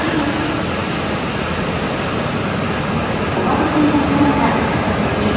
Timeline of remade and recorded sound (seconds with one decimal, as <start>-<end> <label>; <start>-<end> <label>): 0.0-5.4 recorded